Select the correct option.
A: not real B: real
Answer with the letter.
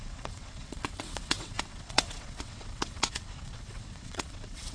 A